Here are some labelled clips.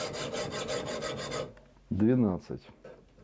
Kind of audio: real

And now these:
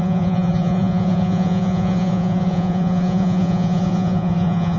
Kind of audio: fake